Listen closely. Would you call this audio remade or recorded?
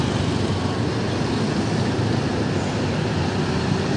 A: recorded